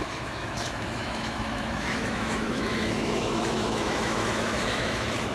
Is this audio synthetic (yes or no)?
yes